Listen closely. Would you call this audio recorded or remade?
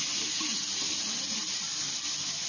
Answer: recorded